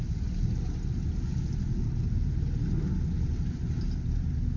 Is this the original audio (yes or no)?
yes